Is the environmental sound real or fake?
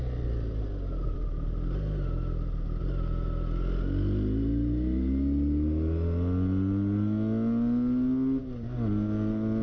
real